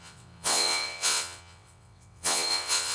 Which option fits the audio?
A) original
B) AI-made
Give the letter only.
B